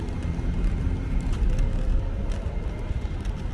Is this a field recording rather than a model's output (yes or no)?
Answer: yes